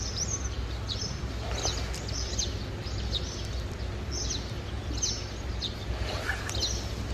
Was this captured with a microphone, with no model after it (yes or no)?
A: yes